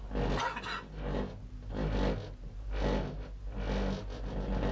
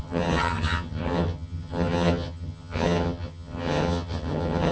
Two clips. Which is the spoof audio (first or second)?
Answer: second